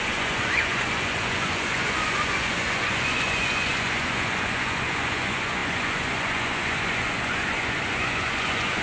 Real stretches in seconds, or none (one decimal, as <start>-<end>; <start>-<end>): none